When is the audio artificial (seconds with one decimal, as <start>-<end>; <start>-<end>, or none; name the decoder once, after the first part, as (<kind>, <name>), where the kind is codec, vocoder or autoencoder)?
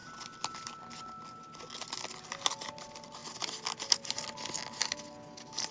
none